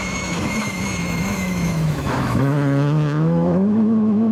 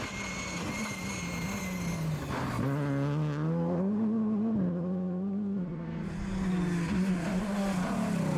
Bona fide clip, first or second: second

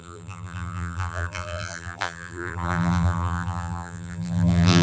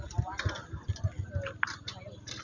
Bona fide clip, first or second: second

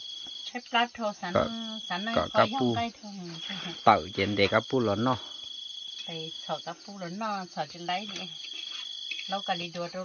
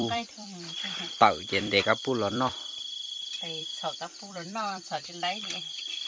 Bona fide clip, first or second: first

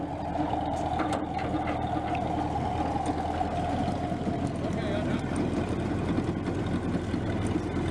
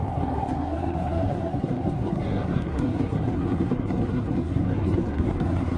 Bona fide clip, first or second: first